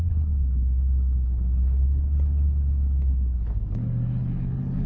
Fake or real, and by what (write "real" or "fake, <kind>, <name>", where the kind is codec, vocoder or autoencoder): fake, codec, HILCodec